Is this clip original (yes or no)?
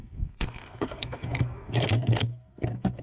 no